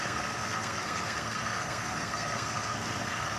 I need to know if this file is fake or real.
fake